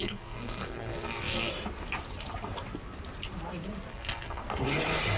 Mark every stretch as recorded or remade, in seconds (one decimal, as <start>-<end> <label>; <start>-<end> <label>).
0.0-1.5 remade; 1.5-3.9 recorded; 3.9-4.4 remade; 4.4-5.2 recorded